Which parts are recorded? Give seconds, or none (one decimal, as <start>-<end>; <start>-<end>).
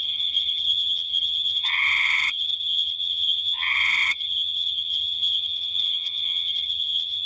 none